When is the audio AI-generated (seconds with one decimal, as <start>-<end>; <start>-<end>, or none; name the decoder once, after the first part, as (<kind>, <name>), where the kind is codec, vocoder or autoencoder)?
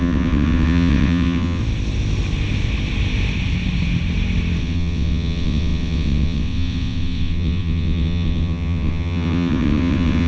0.0-1.6 (vocoder, WaveNeXt); 4.6-10.3